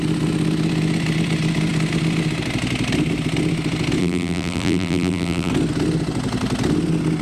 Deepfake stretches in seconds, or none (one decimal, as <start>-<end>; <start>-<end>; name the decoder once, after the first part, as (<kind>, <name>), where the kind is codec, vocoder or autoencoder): 4.0-5.5 (vocoder, BigVGAN v2)